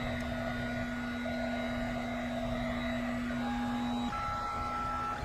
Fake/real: real